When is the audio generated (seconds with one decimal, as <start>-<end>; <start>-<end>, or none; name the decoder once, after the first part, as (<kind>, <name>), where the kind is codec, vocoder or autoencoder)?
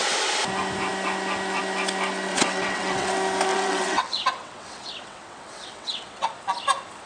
2.3-3.1 (vocoder, WaveNeXt); 3.5-6.3